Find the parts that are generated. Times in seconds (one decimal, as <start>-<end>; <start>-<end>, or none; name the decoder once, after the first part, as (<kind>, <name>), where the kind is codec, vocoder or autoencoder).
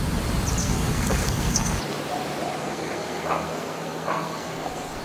0.6-1.8 (codec, SNAC); 2.6-5.0